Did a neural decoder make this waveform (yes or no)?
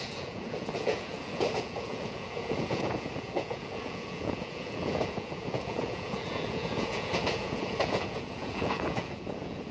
yes